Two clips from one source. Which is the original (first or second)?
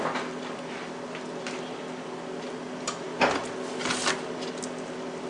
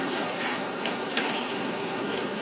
first